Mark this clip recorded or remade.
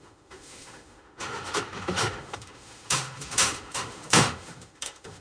remade